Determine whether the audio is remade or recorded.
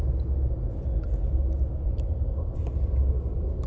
recorded